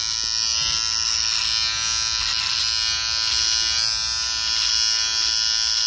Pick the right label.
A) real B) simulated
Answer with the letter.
A